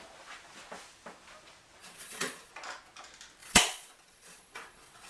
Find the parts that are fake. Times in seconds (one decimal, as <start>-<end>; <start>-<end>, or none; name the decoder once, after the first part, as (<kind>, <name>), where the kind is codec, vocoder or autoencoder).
1.8-2.5 (vocoder, Vocos); 3.4-5.1